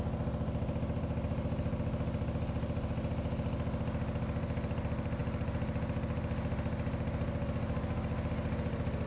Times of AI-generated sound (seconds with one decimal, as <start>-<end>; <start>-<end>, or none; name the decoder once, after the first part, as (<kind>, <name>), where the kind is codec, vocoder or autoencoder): none